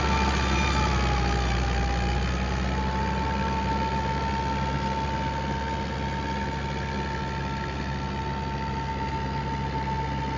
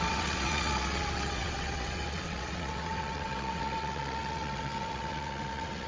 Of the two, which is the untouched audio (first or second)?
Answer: first